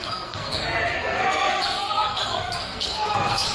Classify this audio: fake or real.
fake